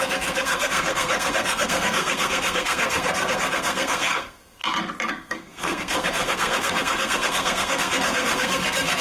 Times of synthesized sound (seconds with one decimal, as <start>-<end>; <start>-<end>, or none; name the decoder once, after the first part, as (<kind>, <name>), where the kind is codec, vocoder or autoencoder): 0.0-4.6 (codec, SNAC); 5.1-9.0